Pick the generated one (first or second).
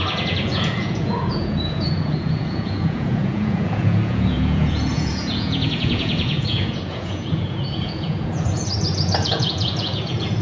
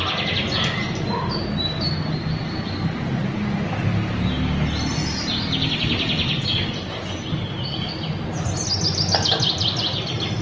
first